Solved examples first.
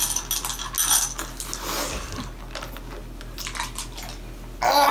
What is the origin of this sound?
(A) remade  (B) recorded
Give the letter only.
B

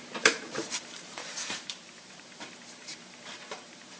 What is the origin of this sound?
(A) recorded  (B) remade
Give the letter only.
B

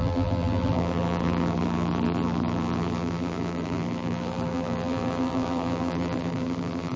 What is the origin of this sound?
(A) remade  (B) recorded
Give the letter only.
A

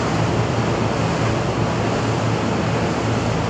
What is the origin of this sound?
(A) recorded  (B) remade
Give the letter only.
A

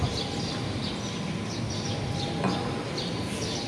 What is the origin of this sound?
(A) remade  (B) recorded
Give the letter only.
B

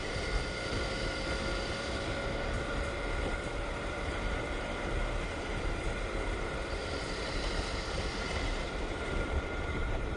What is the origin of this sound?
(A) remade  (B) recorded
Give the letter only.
A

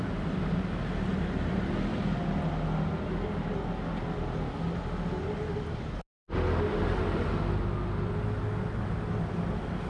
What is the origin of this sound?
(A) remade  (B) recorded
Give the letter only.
B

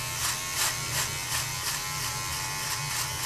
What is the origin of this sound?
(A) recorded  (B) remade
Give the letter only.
A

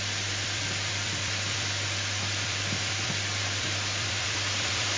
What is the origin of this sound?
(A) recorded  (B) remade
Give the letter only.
B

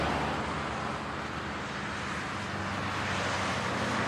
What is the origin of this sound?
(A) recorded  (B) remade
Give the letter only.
A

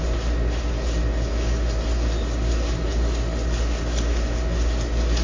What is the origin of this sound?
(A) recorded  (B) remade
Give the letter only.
A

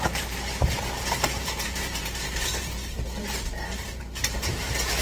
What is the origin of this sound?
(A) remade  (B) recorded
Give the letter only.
A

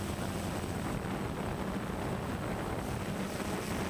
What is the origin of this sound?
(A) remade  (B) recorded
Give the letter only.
B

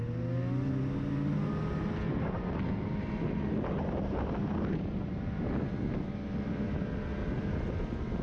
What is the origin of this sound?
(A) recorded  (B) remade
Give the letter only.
A